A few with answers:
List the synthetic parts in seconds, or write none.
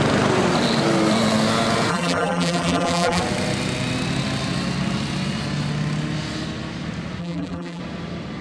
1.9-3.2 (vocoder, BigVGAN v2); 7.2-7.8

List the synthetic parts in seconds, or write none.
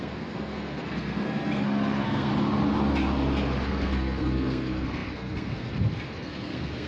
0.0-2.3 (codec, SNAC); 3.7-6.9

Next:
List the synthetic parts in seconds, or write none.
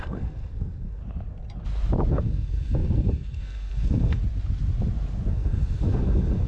0.0-1.0 (codec, SNAC); 2.1-4.2; 5.3-6.5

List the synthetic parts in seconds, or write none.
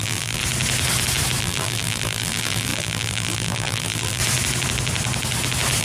0.0-0.4 (vocoder, BigVGAN v2); 1.4-4.2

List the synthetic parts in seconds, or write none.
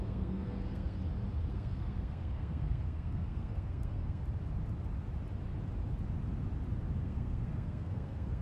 0.0-1.0 (codec, SNAC); 1.5-4.2; 7.0-8.4